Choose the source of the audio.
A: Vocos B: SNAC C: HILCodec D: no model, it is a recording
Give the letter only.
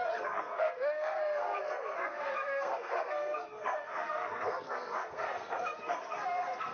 B